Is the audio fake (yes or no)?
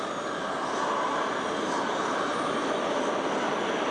no